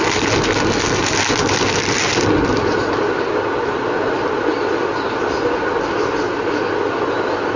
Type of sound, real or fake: real